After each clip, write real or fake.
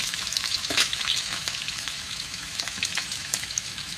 fake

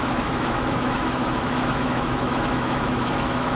fake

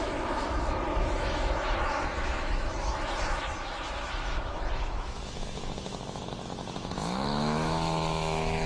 fake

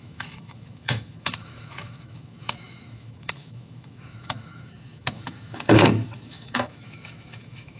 fake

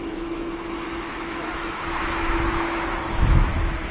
fake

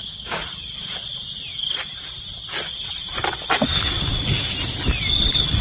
real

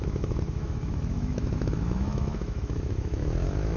fake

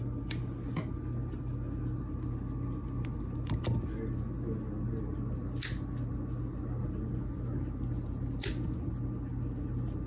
real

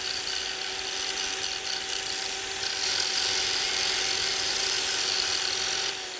real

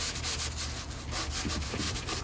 real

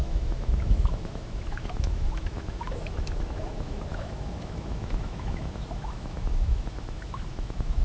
fake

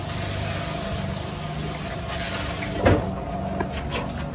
real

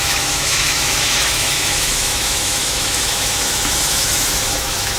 fake